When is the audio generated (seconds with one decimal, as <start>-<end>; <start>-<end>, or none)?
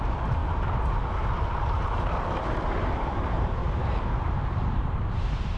0.0-0.4; 2.9-3.6; 4.4-5.6